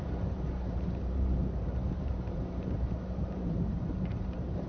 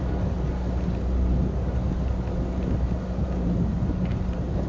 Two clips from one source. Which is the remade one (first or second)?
first